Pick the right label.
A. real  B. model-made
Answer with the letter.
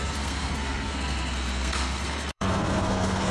B